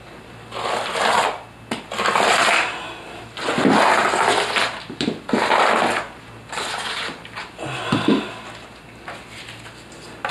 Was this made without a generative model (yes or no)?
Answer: yes